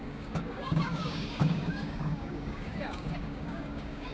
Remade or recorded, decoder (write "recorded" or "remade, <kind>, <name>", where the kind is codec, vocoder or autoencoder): remade, codec, DAC